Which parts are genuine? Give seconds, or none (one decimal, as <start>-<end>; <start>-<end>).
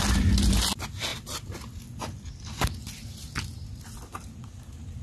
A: 0.0-5.0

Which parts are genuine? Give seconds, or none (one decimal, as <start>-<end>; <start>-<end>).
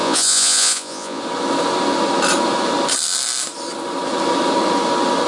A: 1.2-5.3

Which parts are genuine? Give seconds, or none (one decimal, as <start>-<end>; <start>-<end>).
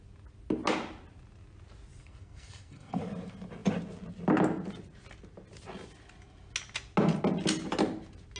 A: 0.0-2.0; 3.0-8.4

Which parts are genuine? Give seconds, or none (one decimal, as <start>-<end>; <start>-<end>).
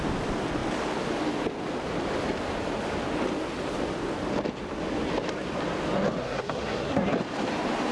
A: 0.0-6.2; 7.1-7.9